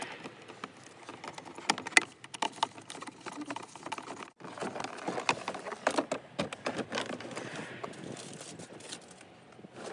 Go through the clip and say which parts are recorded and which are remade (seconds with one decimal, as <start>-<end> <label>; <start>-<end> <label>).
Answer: 0.0-9.9 recorded